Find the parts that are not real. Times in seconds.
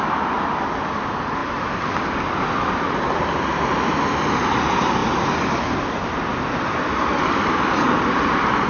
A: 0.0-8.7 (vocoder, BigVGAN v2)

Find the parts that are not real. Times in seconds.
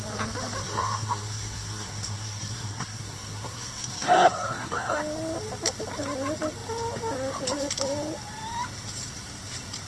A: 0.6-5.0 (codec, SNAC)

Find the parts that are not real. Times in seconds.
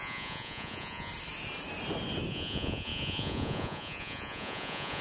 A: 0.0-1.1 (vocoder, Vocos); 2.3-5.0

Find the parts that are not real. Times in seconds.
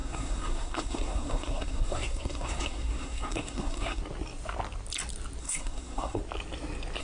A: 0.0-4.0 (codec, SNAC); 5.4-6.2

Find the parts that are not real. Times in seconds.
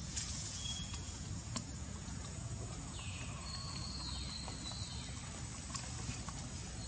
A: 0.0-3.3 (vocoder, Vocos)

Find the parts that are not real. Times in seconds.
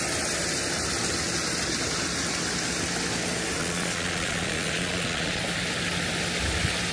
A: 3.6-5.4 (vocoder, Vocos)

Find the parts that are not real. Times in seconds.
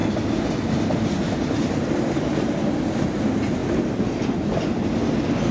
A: none